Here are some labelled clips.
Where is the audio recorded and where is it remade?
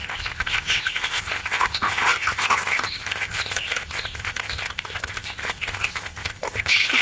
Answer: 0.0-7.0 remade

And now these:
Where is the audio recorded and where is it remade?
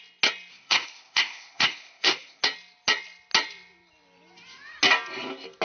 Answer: 0.0-0.5 recorded; 0.5-2.4 remade; 2.4-5.6 recorded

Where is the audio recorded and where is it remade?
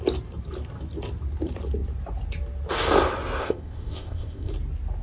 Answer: 0.0-3.4 recorded; 3.4-4.5 remade; 4.5-5.0 recorded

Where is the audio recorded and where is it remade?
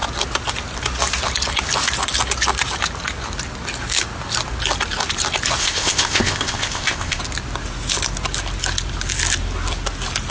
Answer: 0.0-5.6 recorded; 5.6-7.2 remade; 7.2-10.3 recorded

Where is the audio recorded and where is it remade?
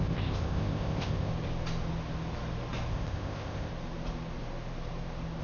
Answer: 0.0-1.3 remade; 1.3-2.9 recorded; 2.9-3.7 remade; 3.7-5.4 recorded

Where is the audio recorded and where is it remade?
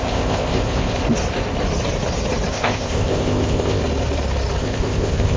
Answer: 0.0-1.0 remade; 1.0-2.5 recorded; 2.5-3.8 remade; 3.8-4.6 recorded; 4.6-5.4 remade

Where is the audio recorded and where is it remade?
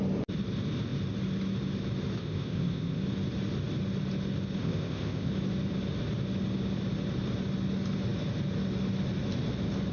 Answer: 0.0-2.2 recorded; 2.2-3.0 remade; 3.0-4.6 recorded; 4.6-5.3 remade; 5.3-9.9 recorded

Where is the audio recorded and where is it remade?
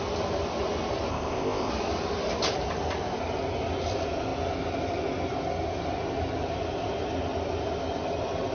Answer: 0.0-1.1 recorded; 1.1-1.7 remade; 1.7-8.5 recorded